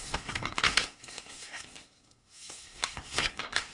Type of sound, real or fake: fake